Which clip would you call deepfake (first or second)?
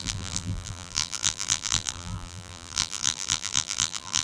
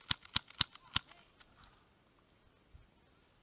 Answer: first